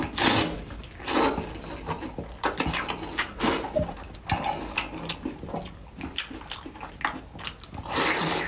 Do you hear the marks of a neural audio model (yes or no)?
no